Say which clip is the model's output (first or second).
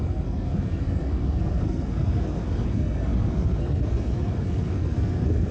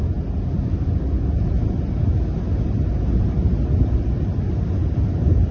first